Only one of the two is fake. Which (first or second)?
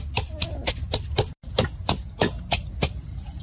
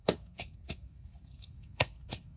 second